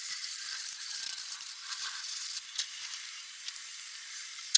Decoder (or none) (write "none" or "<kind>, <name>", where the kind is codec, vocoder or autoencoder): vocoder, BigVGAN v2